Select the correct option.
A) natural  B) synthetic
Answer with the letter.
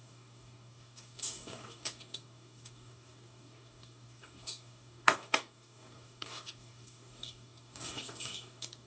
B